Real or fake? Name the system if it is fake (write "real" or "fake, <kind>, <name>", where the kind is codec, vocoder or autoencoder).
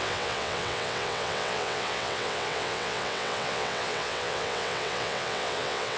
fake, vocoder, WaveNeXt